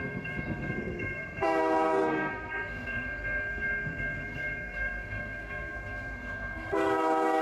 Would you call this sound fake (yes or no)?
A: yes